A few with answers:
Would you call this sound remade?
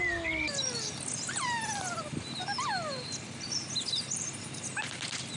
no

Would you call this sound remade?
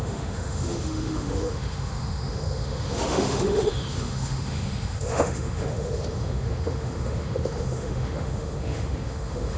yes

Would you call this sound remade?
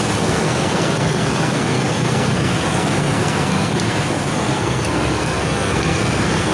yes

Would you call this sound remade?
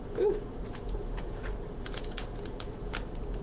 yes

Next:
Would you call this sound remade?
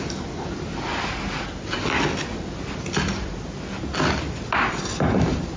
no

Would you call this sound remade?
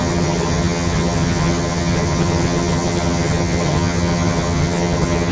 yes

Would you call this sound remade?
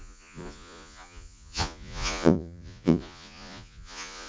yes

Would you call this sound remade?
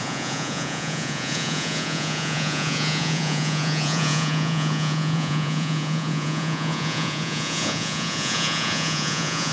yes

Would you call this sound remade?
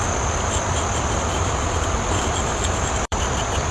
yes